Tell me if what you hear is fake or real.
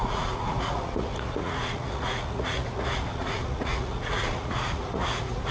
fake